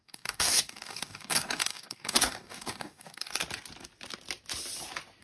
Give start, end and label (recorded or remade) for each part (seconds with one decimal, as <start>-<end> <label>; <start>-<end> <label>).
0.0-3.4 remade; 3.4-5.2 recorded